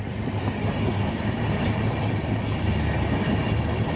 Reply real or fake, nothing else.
real